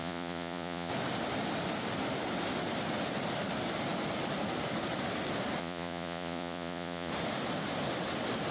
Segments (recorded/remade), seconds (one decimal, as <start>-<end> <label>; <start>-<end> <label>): 0.0-0.9 remade; 0.9-5.6 recorded; 5.6-7.1 remade; 7.1-8.5 recorded